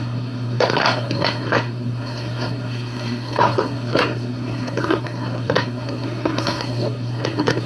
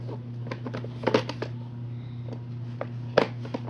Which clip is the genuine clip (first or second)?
second